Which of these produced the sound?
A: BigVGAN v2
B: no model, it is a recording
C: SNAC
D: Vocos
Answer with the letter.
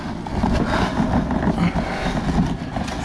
B